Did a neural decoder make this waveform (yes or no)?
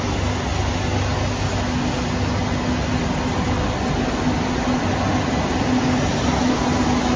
no